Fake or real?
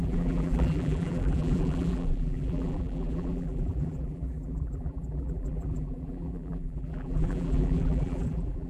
fake